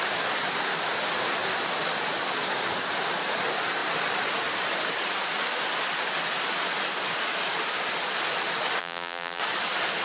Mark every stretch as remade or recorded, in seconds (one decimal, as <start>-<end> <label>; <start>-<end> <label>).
0.0-8.8 recorded; 8.8-9.4 remade; 9.4-10.0 recorded